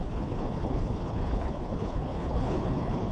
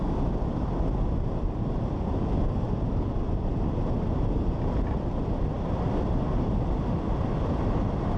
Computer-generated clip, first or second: first